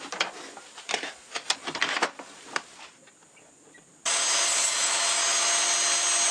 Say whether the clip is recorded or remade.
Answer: recorded